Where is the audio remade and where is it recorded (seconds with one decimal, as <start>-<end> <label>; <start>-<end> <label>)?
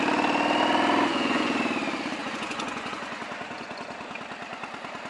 0.0-1.1 recorded; 1.1-1.6 remade; 1.6-2.2 recorded; 2.2-3.9 remade; 3.9-5.1 recorded